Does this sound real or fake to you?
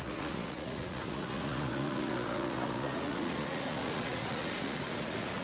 fake